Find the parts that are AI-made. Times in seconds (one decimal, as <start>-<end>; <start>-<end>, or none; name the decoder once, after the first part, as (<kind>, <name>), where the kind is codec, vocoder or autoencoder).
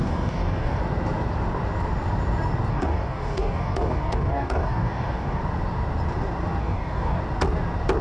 0.0-0.8 (codec, DAC); 2.7-5.4; 6.6-7.2